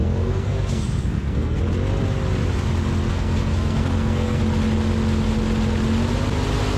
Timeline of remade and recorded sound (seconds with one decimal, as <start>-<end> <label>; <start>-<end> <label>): 0.0-1.6 remade; 1.6-3.1 recorded; 3.1-4.4 remade; 4.4-6.8 recorded